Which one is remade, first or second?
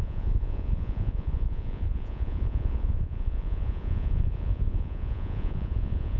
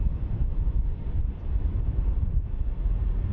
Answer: first